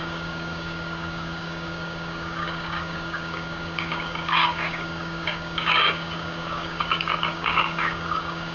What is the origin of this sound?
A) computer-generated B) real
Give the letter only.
A